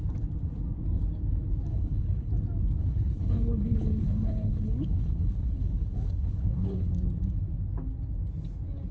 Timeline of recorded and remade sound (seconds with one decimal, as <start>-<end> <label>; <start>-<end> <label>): 0.0-1.7 recorded; 1.7-2.3 remade; 2.3-2.8 recorded; 2.8-6.9 remade; 6.9-8.9 recorded